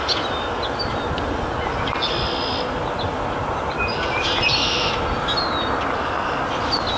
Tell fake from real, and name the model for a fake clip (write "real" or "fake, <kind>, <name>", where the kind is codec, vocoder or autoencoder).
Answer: real